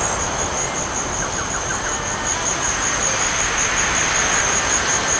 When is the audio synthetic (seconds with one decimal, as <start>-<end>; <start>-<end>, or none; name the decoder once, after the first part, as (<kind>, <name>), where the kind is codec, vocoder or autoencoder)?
none